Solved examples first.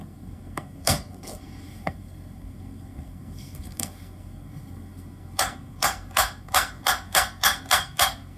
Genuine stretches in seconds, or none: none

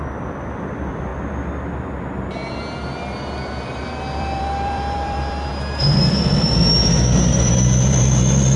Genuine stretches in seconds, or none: 1.1-3.8; 5.5-6.7